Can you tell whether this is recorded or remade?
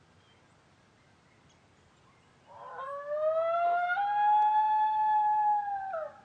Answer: recorded